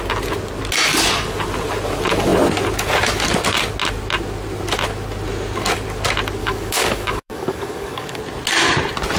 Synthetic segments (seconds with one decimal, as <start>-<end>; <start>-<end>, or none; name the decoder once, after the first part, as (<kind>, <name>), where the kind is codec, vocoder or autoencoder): 6.4-8.2 (codec, DAC)